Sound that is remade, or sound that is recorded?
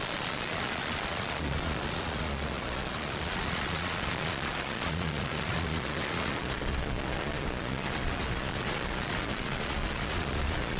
remade